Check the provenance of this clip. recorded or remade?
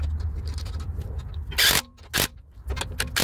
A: recorded